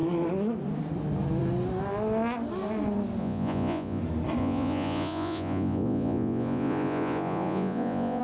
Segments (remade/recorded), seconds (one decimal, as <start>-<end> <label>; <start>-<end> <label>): 0.0-3.2 recorded; 3.2-4.0 remade; 4.0-4.4 recorded; 4.4-8.2 remade